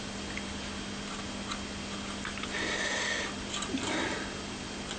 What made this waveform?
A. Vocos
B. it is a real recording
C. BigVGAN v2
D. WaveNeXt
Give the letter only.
B